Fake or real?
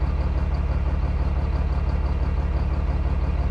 real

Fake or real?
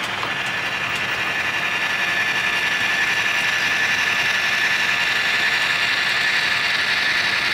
real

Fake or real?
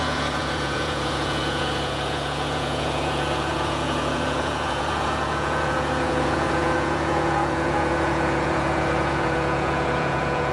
fake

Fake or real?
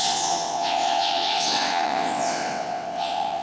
fake